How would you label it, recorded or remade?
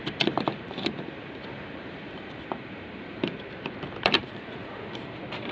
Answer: remade